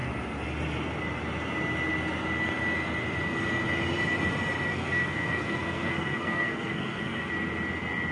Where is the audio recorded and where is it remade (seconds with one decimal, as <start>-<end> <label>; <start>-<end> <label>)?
0.0-4.7 recorded; 4.7-7.3 remade; 7.3-8.1 recorded